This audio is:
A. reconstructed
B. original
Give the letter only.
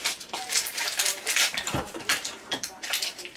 A